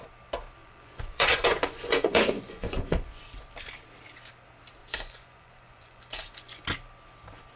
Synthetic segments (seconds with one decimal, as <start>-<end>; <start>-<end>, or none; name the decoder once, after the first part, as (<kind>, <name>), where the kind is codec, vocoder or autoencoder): 0.6-3.3 (vocoder, Vocos); 4.8-6.6

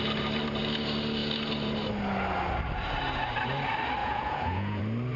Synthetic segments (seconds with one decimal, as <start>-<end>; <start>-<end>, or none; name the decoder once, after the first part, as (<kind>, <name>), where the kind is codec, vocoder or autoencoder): 4.0-4.8 (vocoder, Vocos)

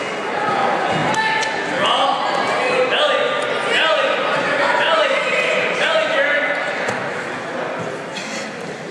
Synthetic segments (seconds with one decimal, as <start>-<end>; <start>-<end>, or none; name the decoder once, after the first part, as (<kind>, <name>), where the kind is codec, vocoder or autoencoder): none

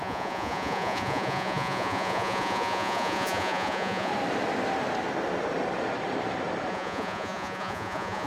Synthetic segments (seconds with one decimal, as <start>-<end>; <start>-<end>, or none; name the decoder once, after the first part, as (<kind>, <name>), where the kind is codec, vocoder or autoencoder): 0.0-4.1 (vocoder, Vocos); 6.7-8.3

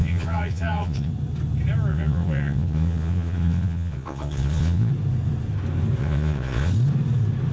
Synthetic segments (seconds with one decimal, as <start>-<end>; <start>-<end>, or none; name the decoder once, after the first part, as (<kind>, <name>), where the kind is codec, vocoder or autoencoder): 0.0-1.1 (vocoder, Vocos); 1.9-4.9; 6.0-6.7

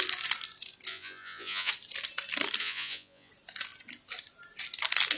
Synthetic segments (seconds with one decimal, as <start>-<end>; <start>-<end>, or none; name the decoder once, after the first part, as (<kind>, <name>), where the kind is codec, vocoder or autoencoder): 0.9-1.7 (vocoder, Vocos); 2.6-3.3

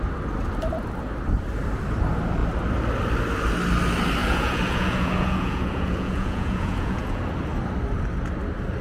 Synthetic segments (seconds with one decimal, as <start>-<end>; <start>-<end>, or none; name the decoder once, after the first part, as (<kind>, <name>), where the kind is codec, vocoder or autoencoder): 4.2-7.3 (vocoder, Vocos)

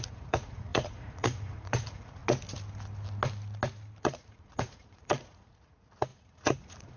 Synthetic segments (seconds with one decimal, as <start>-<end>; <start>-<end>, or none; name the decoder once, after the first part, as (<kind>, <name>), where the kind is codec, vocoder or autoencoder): 0.0-2.2 (vocoder, Vocos); 4.0-7.0